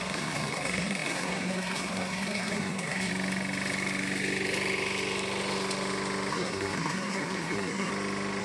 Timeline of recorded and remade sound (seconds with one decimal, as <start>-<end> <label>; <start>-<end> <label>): 0.0-3.1 remade; 3.1-6.3 recorded; 6.3-7.9 remade; 7.9-8.4 recorded